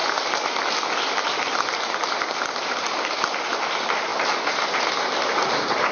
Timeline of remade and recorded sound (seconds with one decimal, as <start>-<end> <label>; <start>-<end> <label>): 0.0-5.9 recorded